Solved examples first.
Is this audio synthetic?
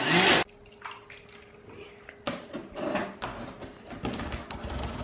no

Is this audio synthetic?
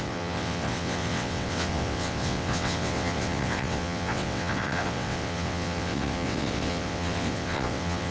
yes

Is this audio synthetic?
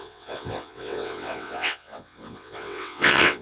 yes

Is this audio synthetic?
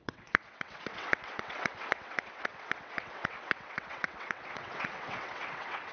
yes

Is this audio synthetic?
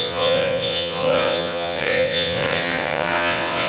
yes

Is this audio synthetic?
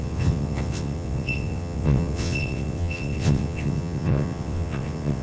yes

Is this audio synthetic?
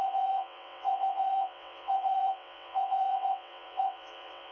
yes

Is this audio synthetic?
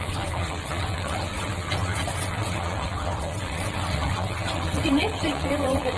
yes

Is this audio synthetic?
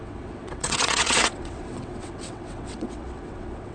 yes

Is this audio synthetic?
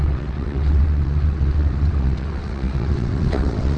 yes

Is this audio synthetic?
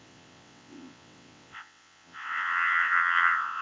yes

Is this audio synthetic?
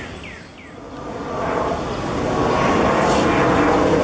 no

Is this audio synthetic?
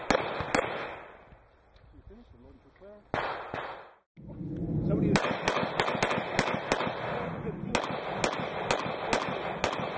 no